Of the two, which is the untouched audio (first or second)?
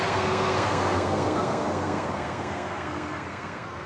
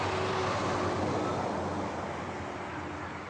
second